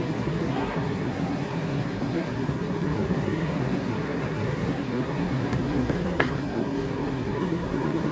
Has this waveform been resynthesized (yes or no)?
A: yes